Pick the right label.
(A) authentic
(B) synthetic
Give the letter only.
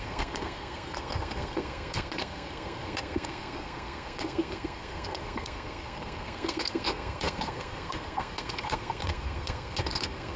B